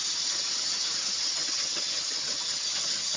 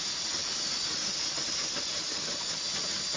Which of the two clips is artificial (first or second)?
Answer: first